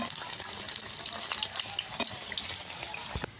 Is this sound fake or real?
real